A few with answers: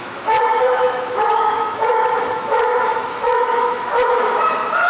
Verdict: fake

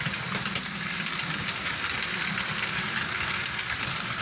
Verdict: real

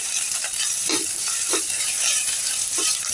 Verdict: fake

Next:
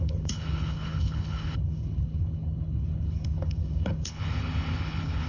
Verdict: fake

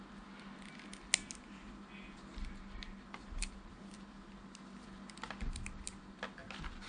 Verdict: real